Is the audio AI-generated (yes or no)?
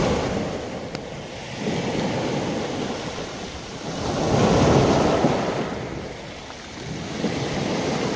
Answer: no